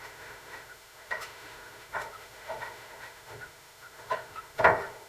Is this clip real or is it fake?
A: fake